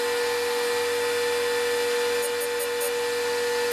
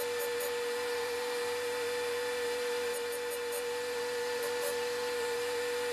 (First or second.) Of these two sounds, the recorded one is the first